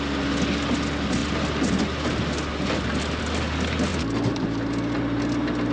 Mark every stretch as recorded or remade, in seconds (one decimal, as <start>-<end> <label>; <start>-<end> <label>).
0.0-3.9 recorded; 3.9-5.2 remade; 5.2-5.7 recorded